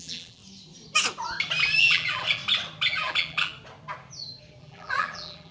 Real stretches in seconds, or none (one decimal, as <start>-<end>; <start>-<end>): 0.4-1.8; 2.4-2.9; 3.5-4.6